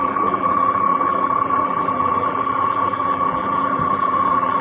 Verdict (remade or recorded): remade